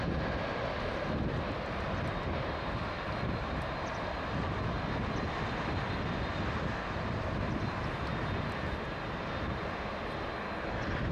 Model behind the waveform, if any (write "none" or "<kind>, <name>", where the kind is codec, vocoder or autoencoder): none